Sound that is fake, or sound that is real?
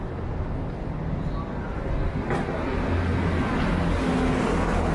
real